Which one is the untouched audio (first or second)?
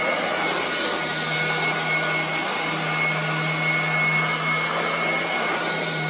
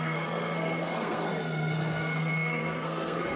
first